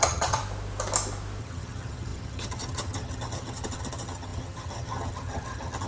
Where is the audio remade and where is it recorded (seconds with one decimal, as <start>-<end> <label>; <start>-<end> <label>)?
0.0-0.4 remade; 0.4-1.4 recorded; 1.4-5.9 remade